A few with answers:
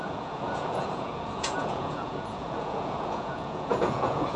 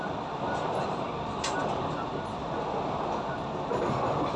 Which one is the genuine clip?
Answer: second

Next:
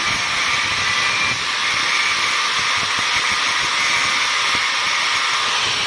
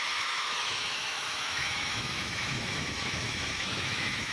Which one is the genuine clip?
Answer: first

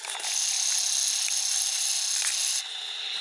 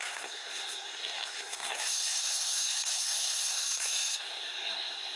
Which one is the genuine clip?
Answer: first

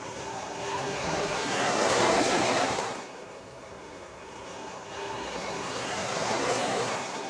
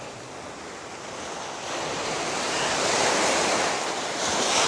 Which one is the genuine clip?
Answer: second